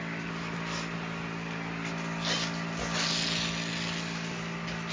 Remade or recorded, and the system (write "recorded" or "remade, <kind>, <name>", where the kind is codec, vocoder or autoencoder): recorded